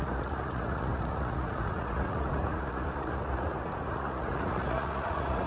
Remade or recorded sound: remade